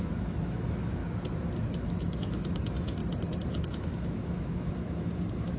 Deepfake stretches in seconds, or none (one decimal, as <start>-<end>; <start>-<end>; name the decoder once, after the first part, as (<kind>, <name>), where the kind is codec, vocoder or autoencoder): 0.0-1.0 (autoencoder, DAC-VAE); 1.7-3.0; 3.7-5.6